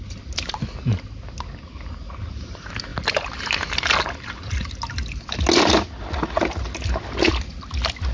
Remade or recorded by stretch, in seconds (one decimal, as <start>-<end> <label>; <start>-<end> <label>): 0.0-8.1 recorded